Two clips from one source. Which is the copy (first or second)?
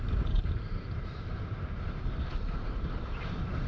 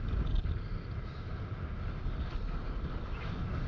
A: first